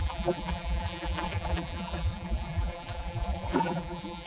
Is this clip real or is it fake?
fake